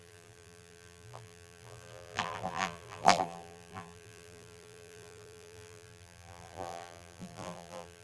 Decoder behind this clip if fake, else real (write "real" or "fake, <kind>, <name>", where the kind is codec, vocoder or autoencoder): fake, vocoder, BigVGAN v2